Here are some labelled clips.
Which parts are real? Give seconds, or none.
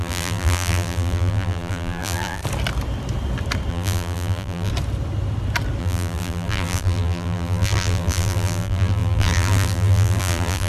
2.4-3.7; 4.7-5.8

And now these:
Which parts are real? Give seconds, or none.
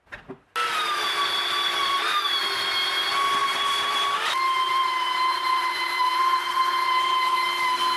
0.0-1.8; 2.4-3.4; 6.2-8.0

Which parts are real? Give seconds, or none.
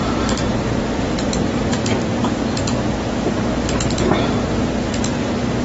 2.2-5.6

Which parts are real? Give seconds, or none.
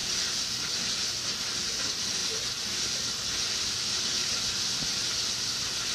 0.0-5.9